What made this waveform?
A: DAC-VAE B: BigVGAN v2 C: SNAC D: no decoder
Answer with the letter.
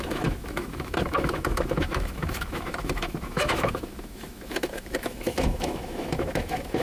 A